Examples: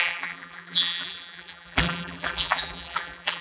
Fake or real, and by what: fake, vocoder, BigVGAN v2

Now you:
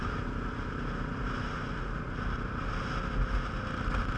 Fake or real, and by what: real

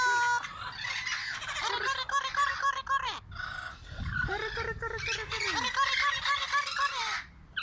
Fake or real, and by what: real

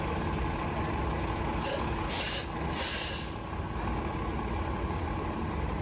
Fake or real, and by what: real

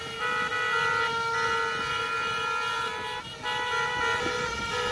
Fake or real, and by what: real